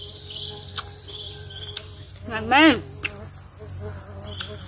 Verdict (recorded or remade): recorded